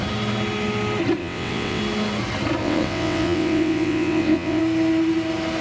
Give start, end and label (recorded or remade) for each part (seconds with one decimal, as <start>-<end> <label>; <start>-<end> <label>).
0.0-1.2 recorded; 1.2-1.8 remade; 1.8-2.6 recorded; 2.6-4.6 remade; 4.6-5.6 recorded